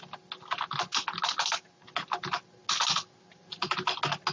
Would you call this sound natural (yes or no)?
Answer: yes